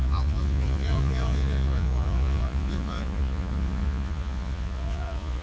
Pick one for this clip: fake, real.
fake